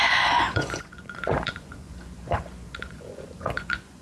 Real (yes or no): no